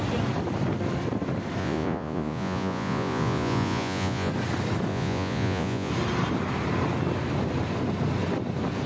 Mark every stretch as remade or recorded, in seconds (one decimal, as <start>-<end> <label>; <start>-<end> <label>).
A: 0.0-1.6 recorded; 1.6-4.3 remade; 4.3-4.9 recorded; 4.9-5.9 remade; 5.9-8.9 recorded